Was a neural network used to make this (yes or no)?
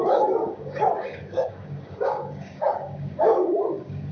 yes